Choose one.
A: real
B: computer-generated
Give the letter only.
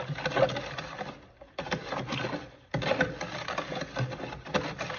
A